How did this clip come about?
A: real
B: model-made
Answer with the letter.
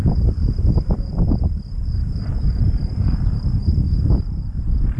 B